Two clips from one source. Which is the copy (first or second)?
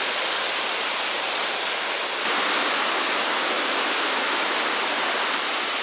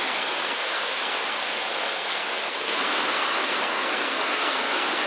second